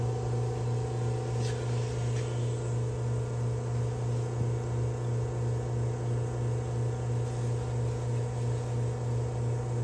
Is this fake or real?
real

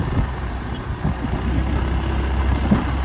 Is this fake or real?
real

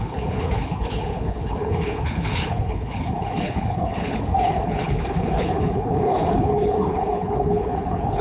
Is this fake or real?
fake